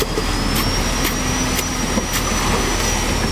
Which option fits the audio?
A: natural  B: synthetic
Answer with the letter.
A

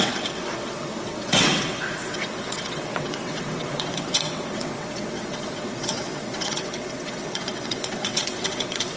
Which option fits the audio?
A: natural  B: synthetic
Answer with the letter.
B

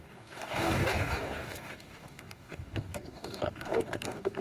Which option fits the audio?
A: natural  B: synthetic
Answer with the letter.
B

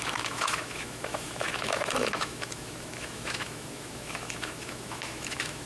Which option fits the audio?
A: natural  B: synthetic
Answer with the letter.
B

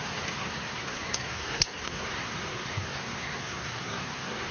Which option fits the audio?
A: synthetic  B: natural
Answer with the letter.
A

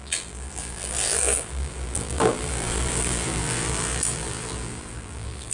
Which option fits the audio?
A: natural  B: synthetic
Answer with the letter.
B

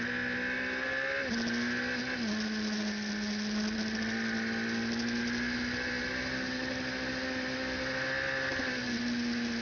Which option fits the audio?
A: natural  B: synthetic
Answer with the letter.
A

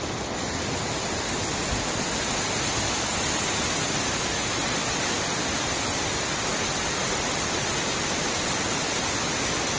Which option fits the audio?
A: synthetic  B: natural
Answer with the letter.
B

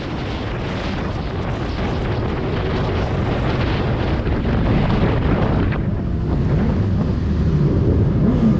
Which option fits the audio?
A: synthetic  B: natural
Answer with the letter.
B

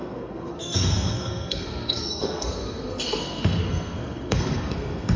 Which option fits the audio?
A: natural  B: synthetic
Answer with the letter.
B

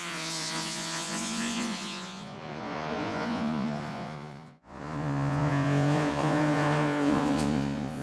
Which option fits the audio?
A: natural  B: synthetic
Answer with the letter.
B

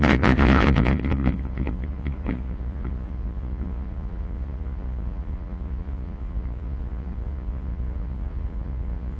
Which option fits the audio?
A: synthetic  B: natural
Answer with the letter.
A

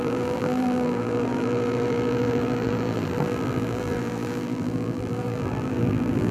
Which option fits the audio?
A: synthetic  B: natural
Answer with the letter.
A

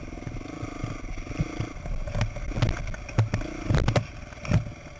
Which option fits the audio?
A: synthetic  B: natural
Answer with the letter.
B